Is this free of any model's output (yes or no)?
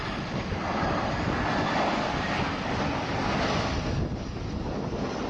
yes